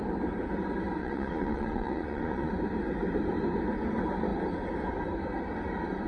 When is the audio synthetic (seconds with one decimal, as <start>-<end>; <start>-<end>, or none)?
1.0-2.5